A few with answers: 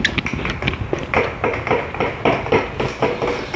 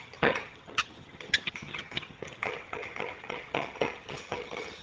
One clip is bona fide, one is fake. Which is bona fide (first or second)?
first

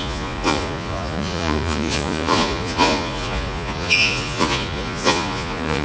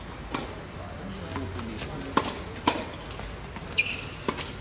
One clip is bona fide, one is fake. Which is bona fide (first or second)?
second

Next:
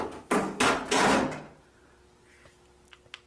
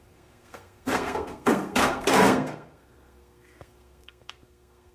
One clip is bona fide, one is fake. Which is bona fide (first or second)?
first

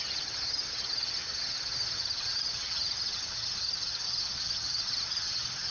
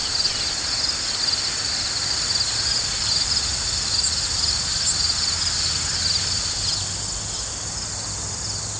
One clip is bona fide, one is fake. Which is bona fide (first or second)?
second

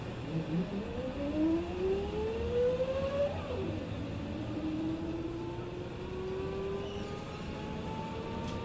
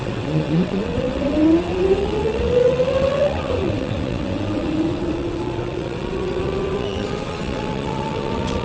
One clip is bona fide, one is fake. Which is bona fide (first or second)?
first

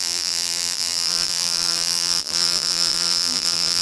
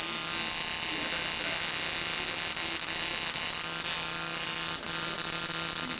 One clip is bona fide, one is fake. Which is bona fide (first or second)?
second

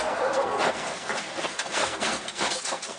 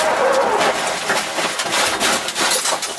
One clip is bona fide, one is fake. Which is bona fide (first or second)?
second